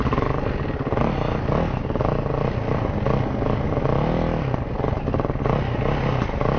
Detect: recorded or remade recorded